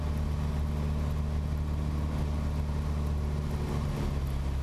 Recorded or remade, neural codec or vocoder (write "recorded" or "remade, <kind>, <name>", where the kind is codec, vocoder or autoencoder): recorded